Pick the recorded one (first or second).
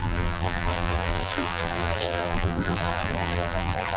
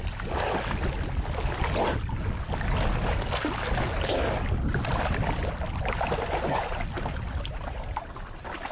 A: second